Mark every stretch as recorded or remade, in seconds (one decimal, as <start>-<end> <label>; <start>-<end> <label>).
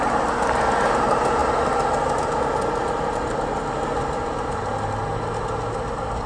0.0-6.3 recorded